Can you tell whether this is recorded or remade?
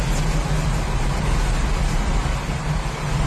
recorded